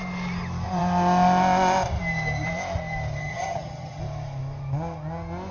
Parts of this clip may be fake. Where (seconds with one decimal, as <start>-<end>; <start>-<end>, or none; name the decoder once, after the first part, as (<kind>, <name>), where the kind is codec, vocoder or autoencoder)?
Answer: 3.2-4.0 (vocoder, HiFi-GAN)